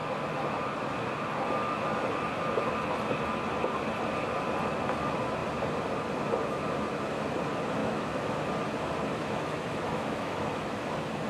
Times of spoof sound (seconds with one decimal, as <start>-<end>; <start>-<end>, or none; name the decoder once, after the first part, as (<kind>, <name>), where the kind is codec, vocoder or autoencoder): 7.8-8.3 (autoencoder, DAC-VAE); 9.1-10.9